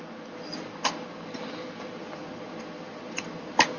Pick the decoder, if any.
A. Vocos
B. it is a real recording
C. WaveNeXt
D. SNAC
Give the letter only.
B